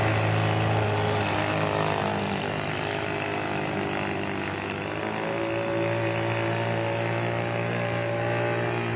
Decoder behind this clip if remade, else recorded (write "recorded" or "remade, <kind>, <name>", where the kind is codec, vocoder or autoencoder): recorded